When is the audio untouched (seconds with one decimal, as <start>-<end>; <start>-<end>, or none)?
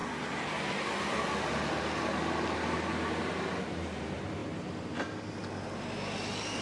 0.0-6.6